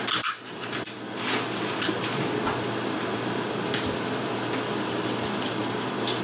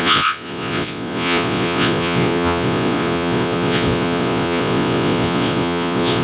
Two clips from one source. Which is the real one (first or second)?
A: first